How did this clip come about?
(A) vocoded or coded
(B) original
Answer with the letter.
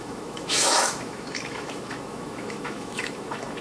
A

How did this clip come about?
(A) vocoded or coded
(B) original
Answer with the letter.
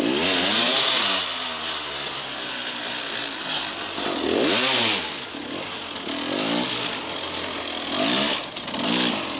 B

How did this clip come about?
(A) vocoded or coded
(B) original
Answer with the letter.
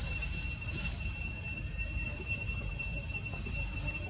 A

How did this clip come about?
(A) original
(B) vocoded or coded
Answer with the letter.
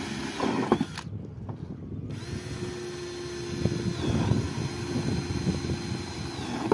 A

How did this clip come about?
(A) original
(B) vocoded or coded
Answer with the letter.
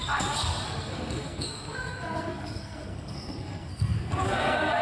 B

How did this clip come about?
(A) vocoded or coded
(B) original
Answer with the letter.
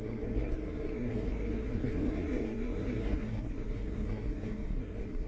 A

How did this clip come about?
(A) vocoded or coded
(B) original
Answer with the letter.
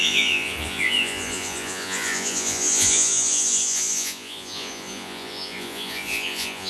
A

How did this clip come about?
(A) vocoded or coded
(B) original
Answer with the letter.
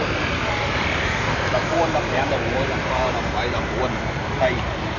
A